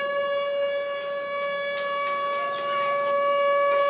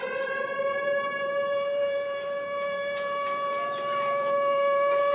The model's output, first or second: second